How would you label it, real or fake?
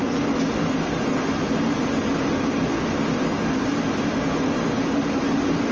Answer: real